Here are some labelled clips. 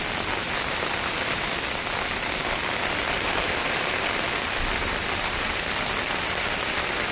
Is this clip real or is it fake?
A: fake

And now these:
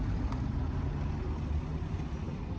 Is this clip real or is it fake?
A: real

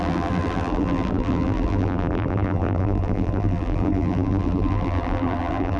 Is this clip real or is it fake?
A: fake